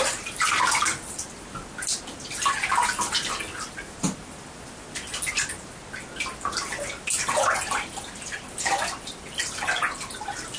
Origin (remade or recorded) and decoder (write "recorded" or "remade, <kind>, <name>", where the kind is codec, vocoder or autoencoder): recorded